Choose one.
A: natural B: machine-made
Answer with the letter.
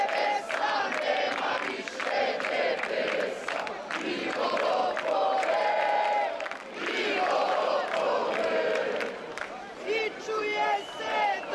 B